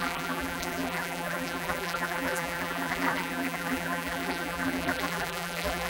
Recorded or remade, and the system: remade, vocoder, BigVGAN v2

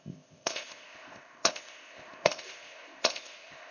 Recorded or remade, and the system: remade, codec, ZipCodec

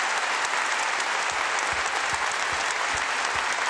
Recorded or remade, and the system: recorded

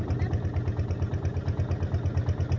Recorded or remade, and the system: recorded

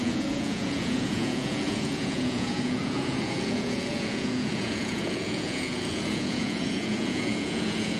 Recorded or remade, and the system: remade, vocoder, Vocos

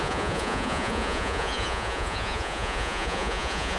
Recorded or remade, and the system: remade, vocoder, Vocos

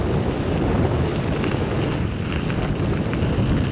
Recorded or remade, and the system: recorded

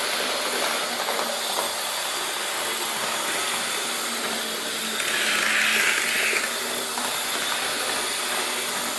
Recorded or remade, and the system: recorded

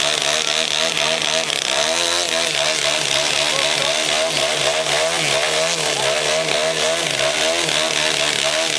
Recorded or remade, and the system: recorded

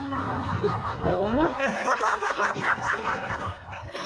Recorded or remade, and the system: remade, codec, SNAC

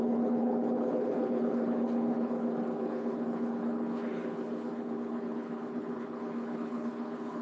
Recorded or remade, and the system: remade, codec, HILCodec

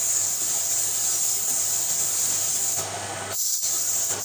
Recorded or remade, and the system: recorded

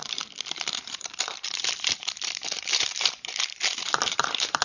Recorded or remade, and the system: remade, vocoder, BigVGAN v2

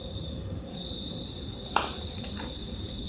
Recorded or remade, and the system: remade, vocoder, BigVGAN v2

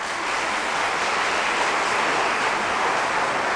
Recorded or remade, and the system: recorded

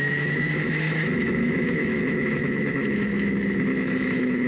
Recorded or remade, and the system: remade, autoencoder, DAC-VAE